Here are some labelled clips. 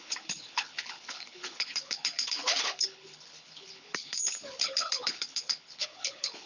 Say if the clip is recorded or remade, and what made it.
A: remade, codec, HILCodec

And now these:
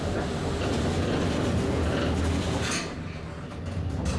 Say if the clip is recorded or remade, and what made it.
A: recorded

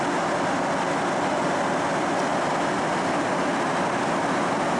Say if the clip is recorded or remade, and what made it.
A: recorded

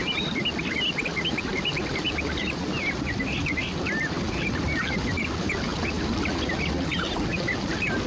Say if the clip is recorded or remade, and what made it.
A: recorded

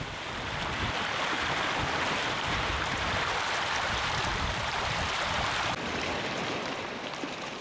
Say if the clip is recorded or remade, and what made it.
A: remade, vocoder, BigVGAN v2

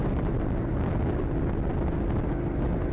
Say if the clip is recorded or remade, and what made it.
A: recorded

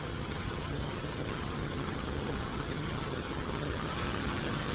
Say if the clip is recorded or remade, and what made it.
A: remade, vocoder, HiFi-GAN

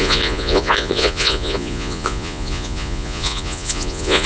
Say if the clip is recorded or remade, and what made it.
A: remade, vocoder, Vocos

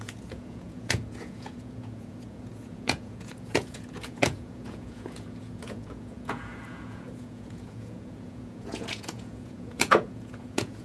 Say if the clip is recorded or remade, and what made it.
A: remade, vocoder, Vocos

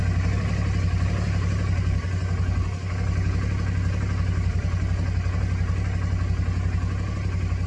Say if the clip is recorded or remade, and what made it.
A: recorded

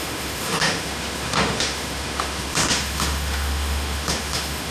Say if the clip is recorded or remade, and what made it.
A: remade, autoencoder, DAC-VAE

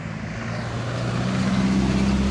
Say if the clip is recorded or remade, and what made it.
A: recorded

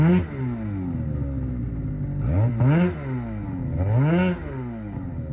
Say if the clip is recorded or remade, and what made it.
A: recorded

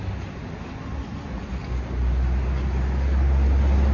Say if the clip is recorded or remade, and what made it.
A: recorded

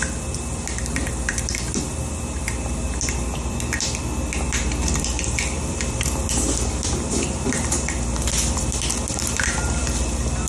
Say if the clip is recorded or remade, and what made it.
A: remade, vocoder, BigVGAN v2